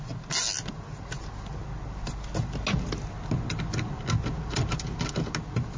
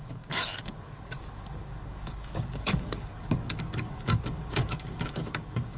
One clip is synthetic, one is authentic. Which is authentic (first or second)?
first